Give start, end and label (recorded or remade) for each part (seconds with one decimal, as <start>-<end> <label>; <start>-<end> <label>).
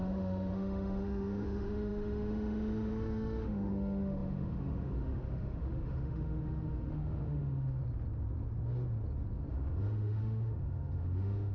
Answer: 0.0-7.8 remade; 7.8-9.5 recorded; 9.5-11.5 remade